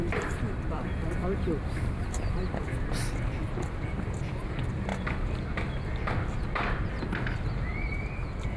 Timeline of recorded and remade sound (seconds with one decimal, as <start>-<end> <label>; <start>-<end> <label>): 0.0-4.9 remade; 4.9-6.9 recorded; 6.9-8.6 remade